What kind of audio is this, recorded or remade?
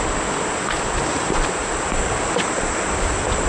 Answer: remade